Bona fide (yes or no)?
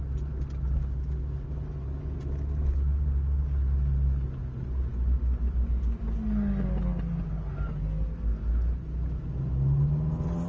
yes